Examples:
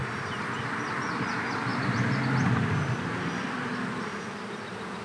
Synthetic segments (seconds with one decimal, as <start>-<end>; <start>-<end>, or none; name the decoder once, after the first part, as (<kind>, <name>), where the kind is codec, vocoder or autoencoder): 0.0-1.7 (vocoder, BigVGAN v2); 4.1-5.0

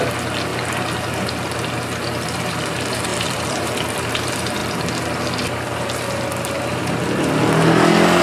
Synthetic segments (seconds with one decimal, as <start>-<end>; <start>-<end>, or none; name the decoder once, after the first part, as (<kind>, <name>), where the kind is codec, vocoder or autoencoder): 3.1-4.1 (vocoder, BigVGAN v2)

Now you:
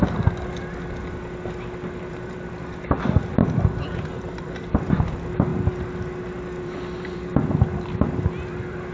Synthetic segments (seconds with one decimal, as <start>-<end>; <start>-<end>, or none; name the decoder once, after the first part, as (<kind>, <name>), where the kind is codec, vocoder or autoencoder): 2.0-5.5 (vocoder, BigVGAN v2); 6.6-8.9